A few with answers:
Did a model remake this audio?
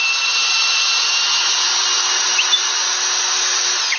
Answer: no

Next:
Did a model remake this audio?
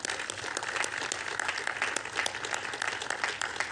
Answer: no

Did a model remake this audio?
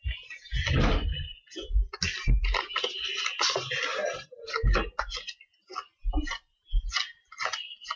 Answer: no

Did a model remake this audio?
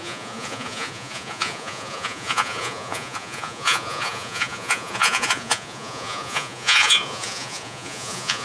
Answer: yes